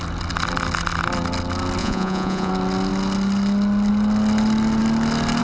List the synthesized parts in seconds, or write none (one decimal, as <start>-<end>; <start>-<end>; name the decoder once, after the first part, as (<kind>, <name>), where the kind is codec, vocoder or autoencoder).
1.8-2.5 (vocoder, Vocos)